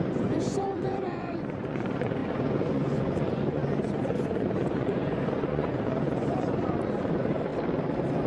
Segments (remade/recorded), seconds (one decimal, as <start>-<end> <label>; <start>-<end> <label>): 0.0-7.5 remade; 7.5-8.3 recorded